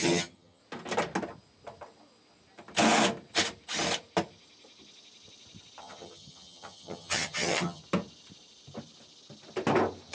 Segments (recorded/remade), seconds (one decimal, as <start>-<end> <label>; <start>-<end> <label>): 0.0-0.6 remade; 0.6-5.8 recorded; 5.8-7.8 remade; 7.8-10.1 recorded